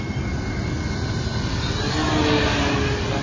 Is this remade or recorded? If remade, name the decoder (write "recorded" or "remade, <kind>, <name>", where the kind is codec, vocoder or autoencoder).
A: recorded